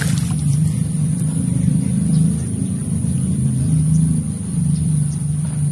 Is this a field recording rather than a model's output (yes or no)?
no